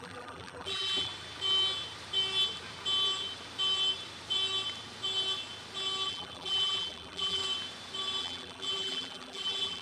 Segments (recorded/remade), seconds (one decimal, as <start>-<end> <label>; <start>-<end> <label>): 0.0-1.1 remade; 1.1-6.1 recorded; 6.1-7.4 remade; 7.4-8.2 recorded; 8.2-9.8 remade